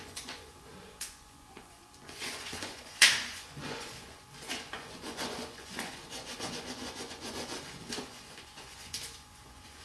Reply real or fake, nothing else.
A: fake